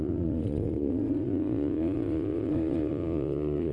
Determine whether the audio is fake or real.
fake